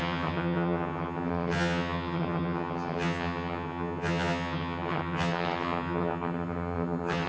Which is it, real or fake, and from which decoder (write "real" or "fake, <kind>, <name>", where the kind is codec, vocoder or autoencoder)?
fake, vocoder, HiFi-GAN